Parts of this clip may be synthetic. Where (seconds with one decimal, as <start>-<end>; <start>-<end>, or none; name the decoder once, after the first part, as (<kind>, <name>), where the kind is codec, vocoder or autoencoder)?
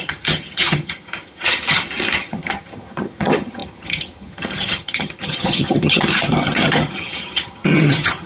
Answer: 0.0-8.3 (vocoder, HiFi-GAN)